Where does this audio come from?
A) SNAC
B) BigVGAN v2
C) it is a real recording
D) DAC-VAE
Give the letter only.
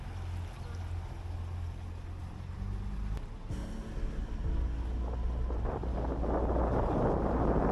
C